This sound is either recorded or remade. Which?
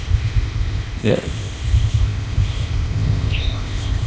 remade